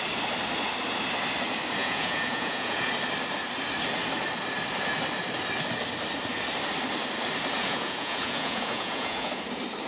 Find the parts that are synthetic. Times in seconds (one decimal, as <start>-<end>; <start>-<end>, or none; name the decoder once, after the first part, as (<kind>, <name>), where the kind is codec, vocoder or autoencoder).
1.8-2.9 (vocoder, Vocos); 7.6-9.3